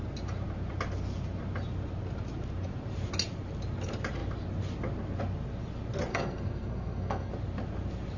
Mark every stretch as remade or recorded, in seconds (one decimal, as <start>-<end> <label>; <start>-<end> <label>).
0.0-6.1 recorded; 6.1-7.3 remade; 7.3-8.2 recorded